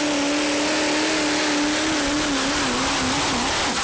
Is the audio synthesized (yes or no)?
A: no